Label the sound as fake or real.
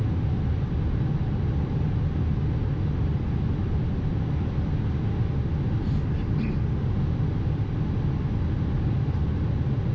real